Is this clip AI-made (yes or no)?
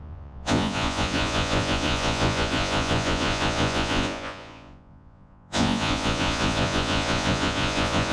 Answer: yes